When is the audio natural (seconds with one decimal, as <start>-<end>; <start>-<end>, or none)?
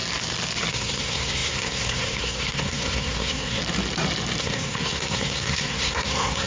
0.0-0.7; 3.6-4.4